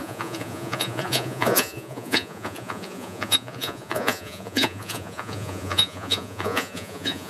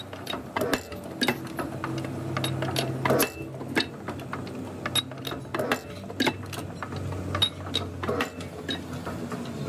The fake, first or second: first